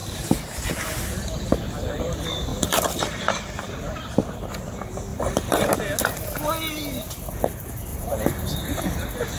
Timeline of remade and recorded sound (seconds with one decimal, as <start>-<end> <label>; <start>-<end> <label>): 0.0-2.5 recorded; 2.5-3.7 remade; 3.7-5.1 recorded; 5.1-5.8 remade; 5.8-7.9 recorded; 7.9-8.8 remade; 8.8-9.4 recorded